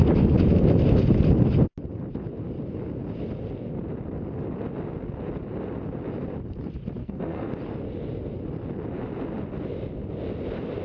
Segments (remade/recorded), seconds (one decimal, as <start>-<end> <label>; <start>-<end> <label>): 0.0-7.0 recorded; 7.0-7.5 remade; 7.5-10.8 recorded